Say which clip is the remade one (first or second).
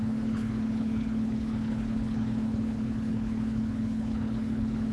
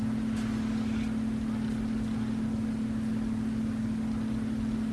first